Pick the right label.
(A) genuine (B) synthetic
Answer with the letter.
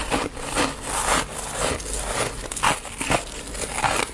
A